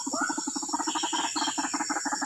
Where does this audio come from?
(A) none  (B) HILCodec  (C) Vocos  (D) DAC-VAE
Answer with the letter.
A